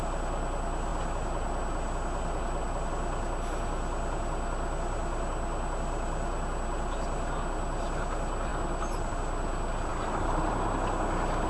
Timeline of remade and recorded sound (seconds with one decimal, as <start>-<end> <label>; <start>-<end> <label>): 0.0-11.5 recorded

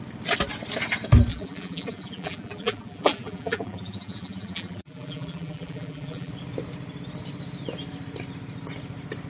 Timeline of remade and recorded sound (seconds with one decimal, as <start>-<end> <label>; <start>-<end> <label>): 0.0-1.3 recorded; 1.3-6.3 remade; 6.3-9.3 recorded

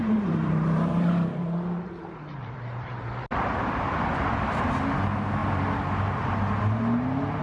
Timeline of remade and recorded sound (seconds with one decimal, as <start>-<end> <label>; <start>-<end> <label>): 0.0-3.1 remade; 3.1-7.4 recorded

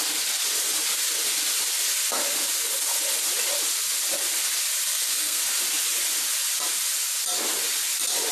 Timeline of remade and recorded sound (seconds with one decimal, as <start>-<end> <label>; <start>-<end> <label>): 0.0-4.9 recorded; 4.9-5.4 remade; 5.4-8.3 recorded

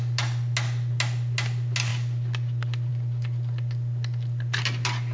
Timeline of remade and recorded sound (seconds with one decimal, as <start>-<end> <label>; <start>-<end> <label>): 0.0-5.1 recorded

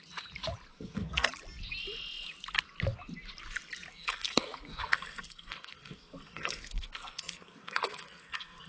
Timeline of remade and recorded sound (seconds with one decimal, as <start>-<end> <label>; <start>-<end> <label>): 0.0-0.7 recorded; 0.7-1.3 remade; 1.3-3.9 recorded; 3.9-8.7 remade